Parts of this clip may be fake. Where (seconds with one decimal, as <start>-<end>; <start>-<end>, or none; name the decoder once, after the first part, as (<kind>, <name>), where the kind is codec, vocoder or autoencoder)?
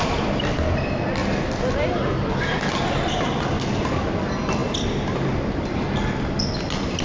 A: none